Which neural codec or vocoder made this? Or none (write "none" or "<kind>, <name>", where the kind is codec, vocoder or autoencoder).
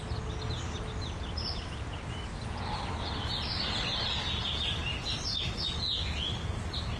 none